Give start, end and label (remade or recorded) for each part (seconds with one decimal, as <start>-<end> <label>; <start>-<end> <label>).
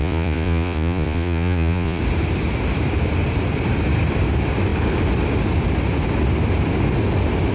0.0-2.0 remade; 2.0-7.5 recorded